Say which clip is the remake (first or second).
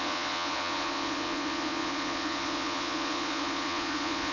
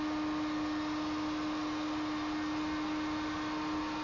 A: first